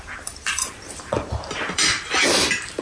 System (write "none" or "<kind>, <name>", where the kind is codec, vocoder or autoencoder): vocoder, BigVGAN v2